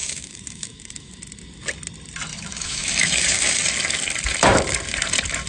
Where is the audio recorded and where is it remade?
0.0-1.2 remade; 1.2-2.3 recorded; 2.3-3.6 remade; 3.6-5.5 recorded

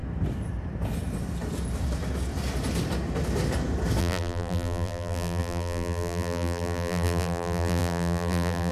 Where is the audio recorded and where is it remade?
0.0-4.0 recorded; 4.0-8.7 remade

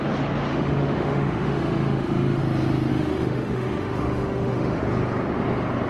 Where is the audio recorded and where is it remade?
0.0-0.5 recorded; 0.5-2.4 remade; 2.4-2.9 recorded; 2.9-4.8 remade; 4.8-5.9 recorded

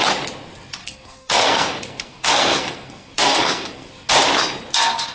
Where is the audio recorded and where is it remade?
0.0-0.8 recorded; 0.8-3.9 remade; 3.9-5.1 recorded

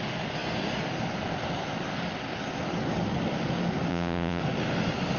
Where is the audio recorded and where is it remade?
0.0-3.9 recorded; 3.9-4.4 remade; 4.4-5.2 recorded